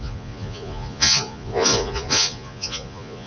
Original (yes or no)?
no